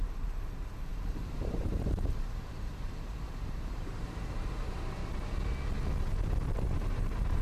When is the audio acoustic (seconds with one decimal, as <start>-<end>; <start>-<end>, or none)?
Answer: 5.0-6.5